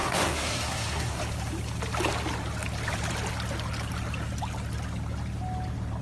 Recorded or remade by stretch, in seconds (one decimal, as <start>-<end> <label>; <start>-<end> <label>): 0.0-1.2 remade; 1.2-6.0 recorded

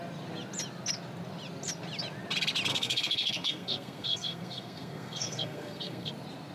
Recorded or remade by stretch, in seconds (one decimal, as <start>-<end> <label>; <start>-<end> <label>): 0.0-2.7 recorded; 2.7-6.1 remade; 6.1-6.5 recorded

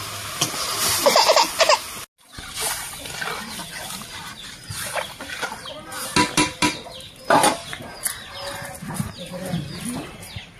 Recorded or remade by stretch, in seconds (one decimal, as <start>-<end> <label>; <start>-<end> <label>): 0.0-10.6 recorded

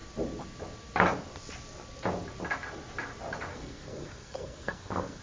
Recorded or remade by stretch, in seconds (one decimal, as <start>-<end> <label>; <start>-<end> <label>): 0.0-3.5 recorded; 3.5-5.2 remade

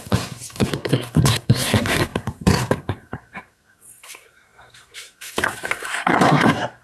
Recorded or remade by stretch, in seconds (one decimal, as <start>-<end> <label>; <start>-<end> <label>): 0.0-6.8 remade

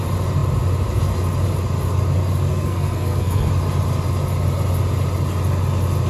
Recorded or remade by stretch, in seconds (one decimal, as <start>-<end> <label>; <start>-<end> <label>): 0.0-2.5 recorded; 2.5-3.5 remade; 3.5-6.1 recorded